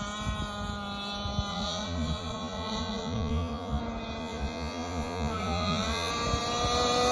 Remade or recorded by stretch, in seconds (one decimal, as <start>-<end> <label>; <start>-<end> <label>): 0.0-1.5 recorded; 1.5-3.8 remade; 3.8-4.2 recorded; 4.2-6.1 remade; 6.1-7.1 recorded